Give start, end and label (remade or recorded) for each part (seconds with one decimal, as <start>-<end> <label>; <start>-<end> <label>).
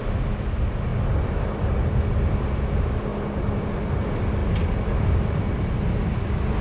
0.0-6.6 recorded